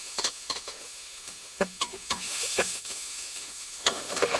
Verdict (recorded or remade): remade